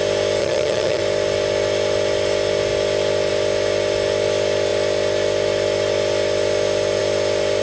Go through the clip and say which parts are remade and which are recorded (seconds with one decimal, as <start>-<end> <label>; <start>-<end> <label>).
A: 0.0-0.4 recorded; 0.4-1.0 remade; 1.0-7.6 recorded